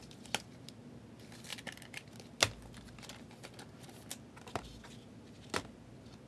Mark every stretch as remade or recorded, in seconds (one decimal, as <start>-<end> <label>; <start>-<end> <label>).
0.0-6.3 recorded